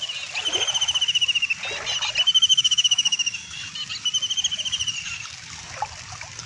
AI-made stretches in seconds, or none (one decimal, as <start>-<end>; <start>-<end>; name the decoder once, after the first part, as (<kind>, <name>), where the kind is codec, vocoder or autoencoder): 2.5-3.7 (codec, DAC)